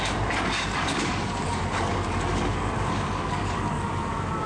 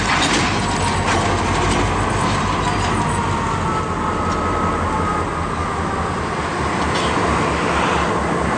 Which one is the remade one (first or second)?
first